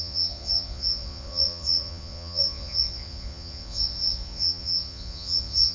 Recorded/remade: remade